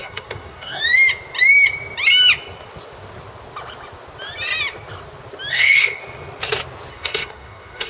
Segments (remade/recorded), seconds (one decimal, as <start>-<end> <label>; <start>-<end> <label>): 0.0-0.8 remade; 0.8-5.5 recorded; 5.5-6.0 remade; 6.0-6.9 recorded; 6.9-7.9 remade